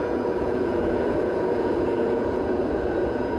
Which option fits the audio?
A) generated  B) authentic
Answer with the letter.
A